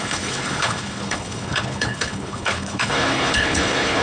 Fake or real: fake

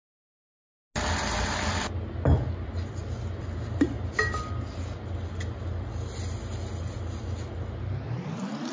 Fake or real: real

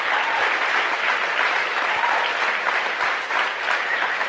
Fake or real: real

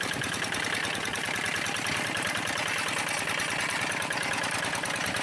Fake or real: real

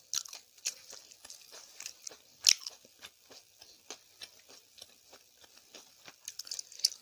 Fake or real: real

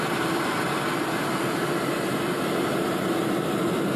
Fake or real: real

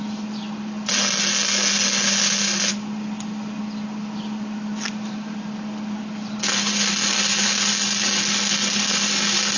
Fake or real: real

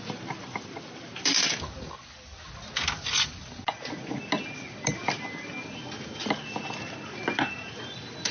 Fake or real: real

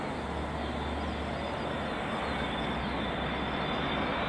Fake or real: real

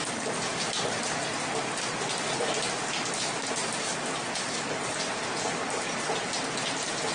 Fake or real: real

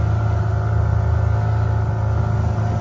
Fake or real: real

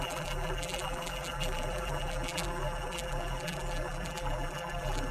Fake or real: fake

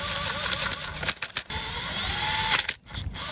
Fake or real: real